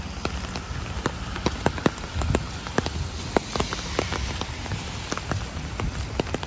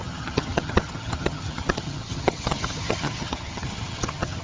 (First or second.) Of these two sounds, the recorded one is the first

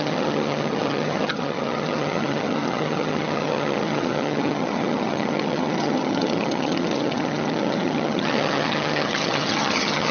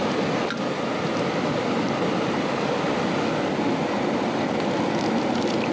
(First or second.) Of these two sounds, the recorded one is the second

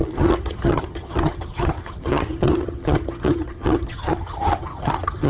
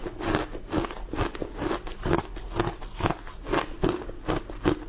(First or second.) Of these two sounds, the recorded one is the second